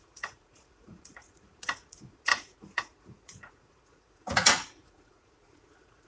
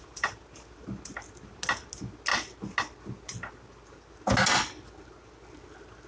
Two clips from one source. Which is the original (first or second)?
second